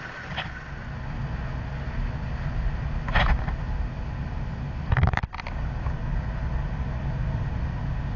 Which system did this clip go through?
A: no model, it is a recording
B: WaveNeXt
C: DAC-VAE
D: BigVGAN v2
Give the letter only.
A